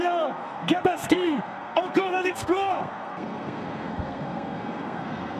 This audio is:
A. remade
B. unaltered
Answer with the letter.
A